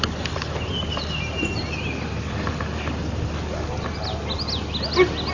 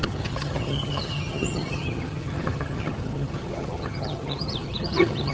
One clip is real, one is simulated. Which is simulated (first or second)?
second